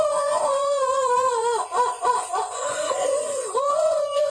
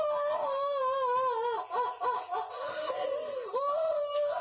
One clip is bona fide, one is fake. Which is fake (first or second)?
first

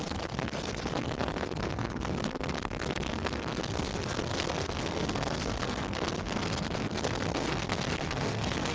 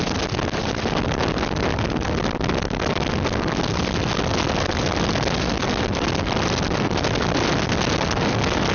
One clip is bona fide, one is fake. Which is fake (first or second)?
first